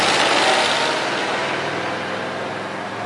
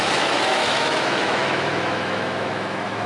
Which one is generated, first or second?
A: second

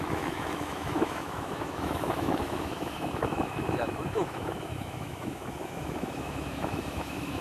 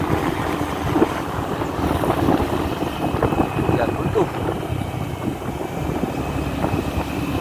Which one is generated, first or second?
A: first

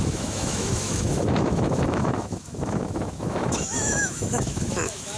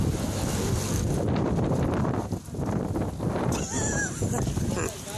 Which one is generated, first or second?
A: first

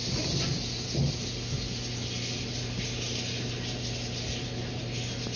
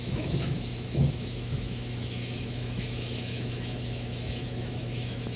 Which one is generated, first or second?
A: second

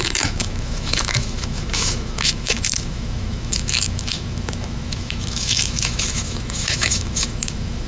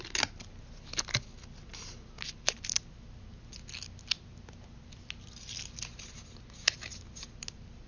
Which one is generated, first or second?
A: first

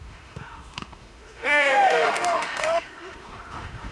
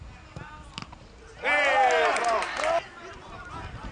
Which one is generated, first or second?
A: first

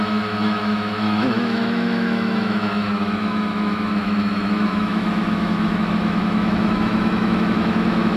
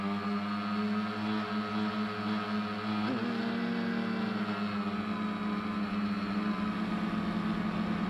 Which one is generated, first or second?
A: first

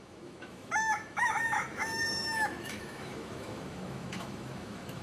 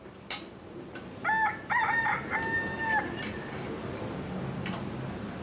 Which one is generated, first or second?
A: first